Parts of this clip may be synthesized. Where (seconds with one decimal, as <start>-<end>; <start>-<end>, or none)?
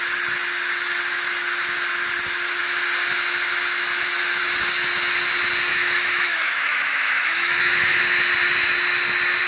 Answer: 5.7-8.0